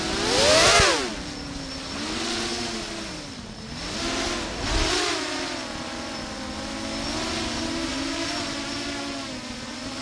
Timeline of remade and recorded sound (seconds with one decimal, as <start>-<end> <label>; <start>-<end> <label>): 0.0-10.0 recorded